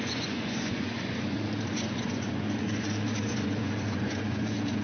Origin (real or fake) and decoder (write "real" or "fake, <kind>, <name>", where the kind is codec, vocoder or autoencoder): fake, vocoder, Vocos